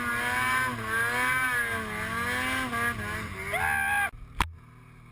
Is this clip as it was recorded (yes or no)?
yes